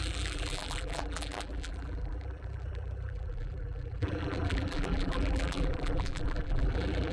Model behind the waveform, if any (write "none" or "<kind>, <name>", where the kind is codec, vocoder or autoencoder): vocoder, BigVGAN v2